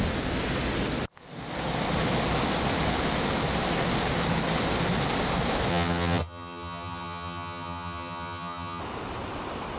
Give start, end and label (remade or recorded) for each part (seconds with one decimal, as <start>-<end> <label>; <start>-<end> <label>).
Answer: 0.0-5.7 recorded; 5.7-8.8 remade; 8.8-9.8 recorded